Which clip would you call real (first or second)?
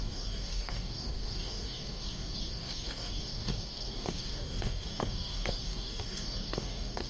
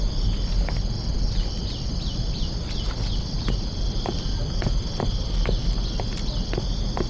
second